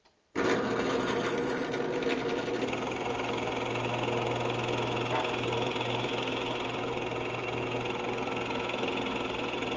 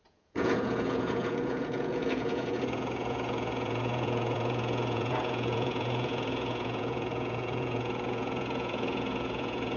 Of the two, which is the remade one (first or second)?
second